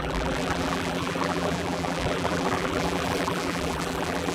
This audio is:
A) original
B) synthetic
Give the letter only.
B